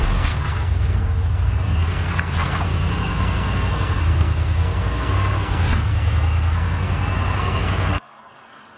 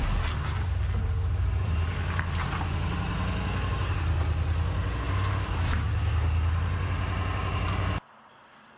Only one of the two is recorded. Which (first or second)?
second